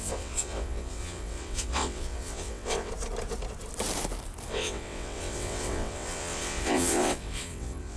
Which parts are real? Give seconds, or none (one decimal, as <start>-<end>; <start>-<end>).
2.9-4.5